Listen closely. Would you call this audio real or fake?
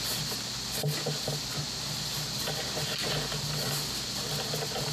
real